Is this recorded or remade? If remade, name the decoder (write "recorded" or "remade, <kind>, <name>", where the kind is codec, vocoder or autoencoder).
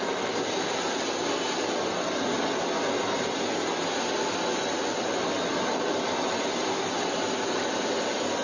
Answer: recorded